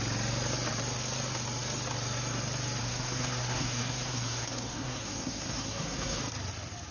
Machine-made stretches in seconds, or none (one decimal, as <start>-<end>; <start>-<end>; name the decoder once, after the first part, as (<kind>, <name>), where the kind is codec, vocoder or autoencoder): 2.8-6.2 (codec, SNAC)